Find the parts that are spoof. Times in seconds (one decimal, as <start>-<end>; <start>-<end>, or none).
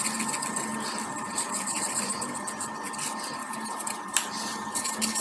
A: none